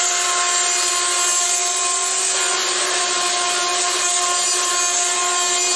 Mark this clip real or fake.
real